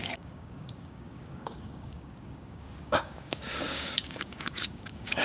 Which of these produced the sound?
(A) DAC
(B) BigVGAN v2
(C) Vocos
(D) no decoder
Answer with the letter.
A